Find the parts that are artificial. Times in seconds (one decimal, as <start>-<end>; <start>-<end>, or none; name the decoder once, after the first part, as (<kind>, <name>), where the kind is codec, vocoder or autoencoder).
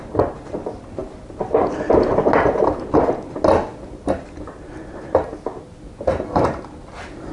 none